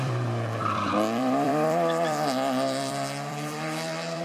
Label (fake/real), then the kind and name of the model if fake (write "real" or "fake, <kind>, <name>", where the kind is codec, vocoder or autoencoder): fake, vocoder, BigVGAN v2